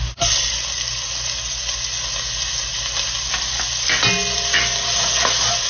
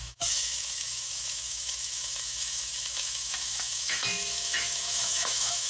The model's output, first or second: second